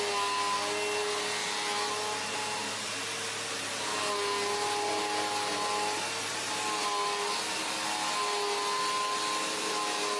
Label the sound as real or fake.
real